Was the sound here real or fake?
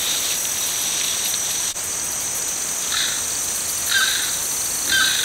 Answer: real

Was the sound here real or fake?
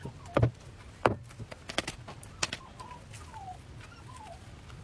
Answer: real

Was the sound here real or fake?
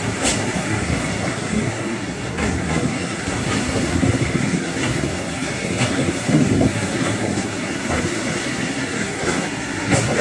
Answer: fake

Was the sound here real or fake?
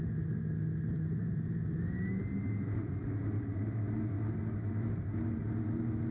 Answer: real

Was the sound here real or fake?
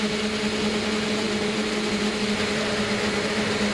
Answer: real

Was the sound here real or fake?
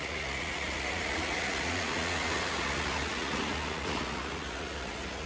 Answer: fake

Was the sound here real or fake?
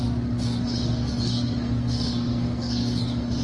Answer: fake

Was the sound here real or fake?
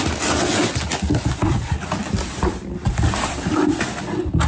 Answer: real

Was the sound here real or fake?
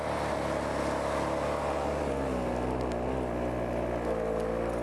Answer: real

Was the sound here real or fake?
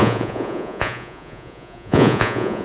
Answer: fake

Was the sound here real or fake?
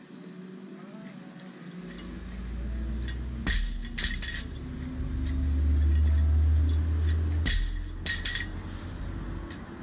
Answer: real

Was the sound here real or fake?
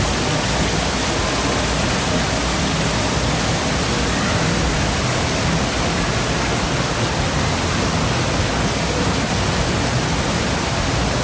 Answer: real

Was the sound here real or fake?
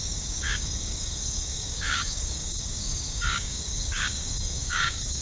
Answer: fake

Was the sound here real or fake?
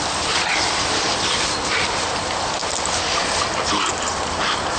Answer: real